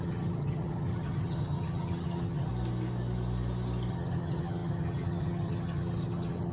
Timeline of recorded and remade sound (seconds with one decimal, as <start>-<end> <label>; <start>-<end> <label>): 0.0-2.5 remade; 2.5-3.9 recorded; 3.9-6.5 remade